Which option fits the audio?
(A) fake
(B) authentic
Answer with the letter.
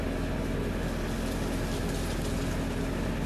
B